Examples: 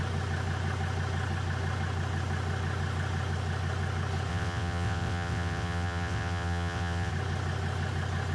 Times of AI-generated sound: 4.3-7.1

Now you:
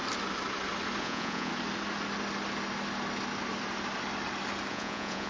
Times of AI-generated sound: 1.0-1.5; 4.7-5.3